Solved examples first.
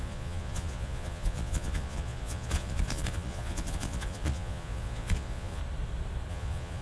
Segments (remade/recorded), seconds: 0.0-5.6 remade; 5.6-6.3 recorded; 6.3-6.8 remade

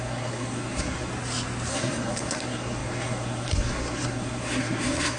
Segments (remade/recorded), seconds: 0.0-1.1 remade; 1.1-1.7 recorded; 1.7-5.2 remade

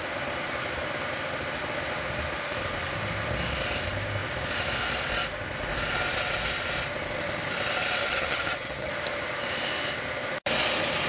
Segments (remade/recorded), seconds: 0.0-8.0 recorded; 8.0-8.9 remade; 8.9-11.1 recorded

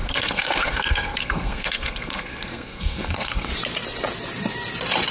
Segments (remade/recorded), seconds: 0.0-3.5 remade; 3.5-5.1 recorded